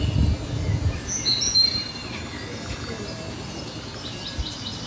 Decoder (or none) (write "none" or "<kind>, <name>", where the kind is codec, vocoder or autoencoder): none